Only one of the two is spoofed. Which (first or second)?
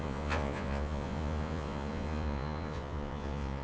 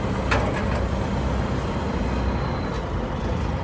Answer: first